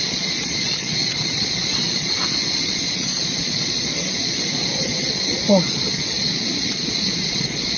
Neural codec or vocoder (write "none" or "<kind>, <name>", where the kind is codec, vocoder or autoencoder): vocoder, Vocos